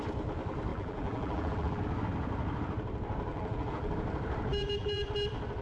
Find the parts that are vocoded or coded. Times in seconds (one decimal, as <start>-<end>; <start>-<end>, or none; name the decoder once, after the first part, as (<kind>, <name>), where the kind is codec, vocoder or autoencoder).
0.7-1.8 (vocoder, BigVGAN v2); 3.3-3.9; 4.5-5.1